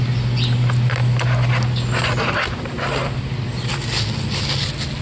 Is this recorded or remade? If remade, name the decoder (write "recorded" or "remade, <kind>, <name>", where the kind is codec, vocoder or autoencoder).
recorded